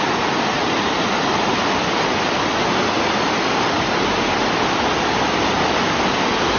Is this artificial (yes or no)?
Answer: no